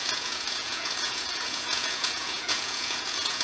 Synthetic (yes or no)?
yes